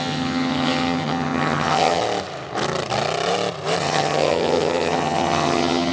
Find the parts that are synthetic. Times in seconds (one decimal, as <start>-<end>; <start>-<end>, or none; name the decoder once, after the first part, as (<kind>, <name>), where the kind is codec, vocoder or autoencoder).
0.0-2.0 (vocoder, HiFi-GAN); 3.8-5.9